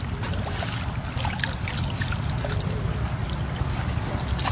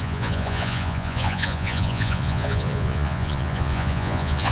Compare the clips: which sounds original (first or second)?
first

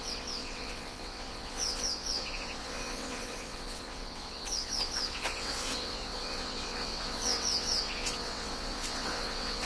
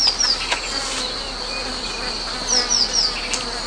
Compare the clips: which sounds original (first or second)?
second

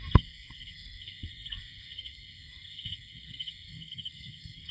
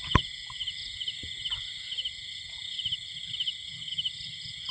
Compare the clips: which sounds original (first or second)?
second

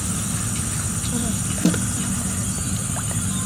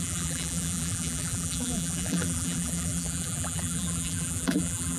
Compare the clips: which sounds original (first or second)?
first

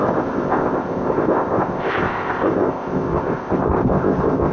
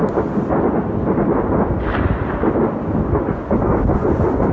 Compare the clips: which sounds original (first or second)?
second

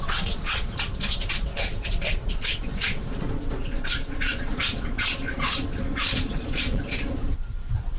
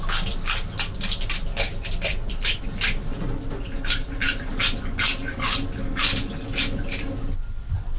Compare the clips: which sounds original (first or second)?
second